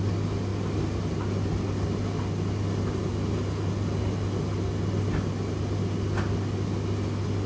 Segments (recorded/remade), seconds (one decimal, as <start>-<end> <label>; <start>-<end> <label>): 0.0-7.5 recorded